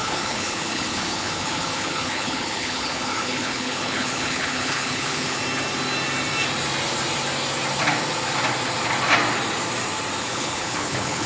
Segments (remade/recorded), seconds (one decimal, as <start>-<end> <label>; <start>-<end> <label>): 0.0-5.4 remade; 5.4-10.2 recorded; 10.2-11.3 remade